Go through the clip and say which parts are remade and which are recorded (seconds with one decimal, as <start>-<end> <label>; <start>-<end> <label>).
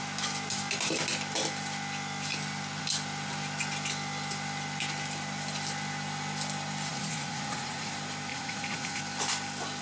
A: 0.0-6.9 recorded; 6.9-7.9 remade; 7.9-8.3 recorded; 8.3-9.0 remade; 9.0-9.8 recorded